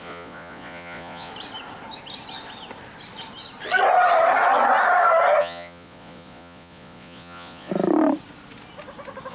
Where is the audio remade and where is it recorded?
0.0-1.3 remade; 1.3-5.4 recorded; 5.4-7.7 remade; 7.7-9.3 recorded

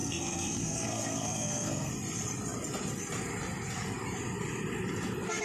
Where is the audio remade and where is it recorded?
0.0-1.9 remade; 1.9-5.4 recorded

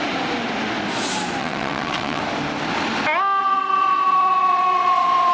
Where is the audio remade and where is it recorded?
0.0-1.4 recorded; 1.4-2.2 remade; 2.2-3.4 recorded; 3.4-5.3 remade

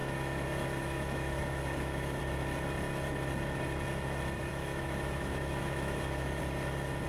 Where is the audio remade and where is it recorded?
0.0-2.2 remade; 2.2-4.5 recorded; 4.5-6.4 remade; 6.4-7.1 recorded